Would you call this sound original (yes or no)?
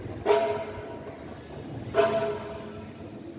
yes